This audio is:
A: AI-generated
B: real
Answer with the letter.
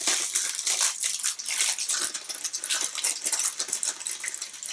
B